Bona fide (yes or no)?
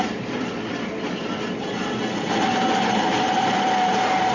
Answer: yes